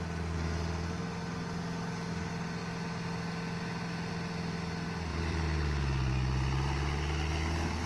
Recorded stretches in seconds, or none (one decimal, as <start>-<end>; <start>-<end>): 0.0-5.1; 6.1-7.9